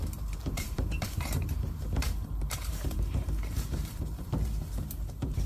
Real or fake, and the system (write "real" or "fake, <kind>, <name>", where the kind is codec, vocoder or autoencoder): fake, vocoder, BigVGAN v2